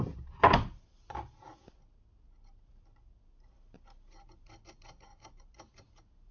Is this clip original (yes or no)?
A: yes